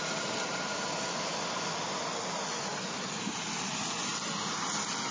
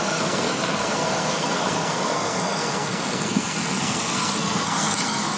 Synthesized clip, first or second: second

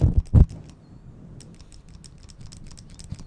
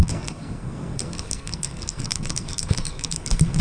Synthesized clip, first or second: second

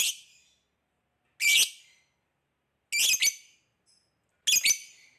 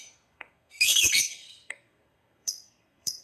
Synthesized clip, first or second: second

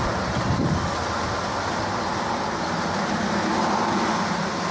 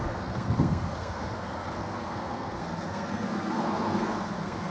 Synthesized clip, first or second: second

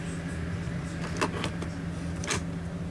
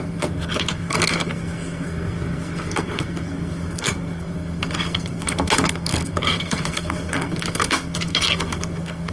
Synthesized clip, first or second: second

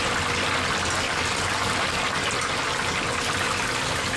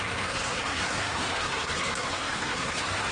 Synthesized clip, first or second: second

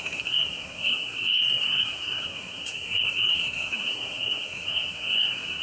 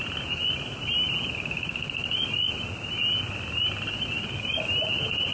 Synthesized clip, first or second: first